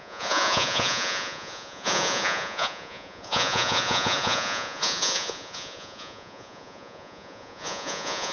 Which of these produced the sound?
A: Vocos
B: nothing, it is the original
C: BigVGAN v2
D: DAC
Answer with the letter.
A